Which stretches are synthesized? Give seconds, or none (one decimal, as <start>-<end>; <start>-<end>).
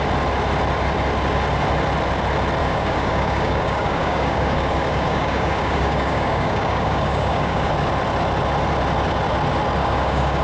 2.6-7.7; 9.8-10.4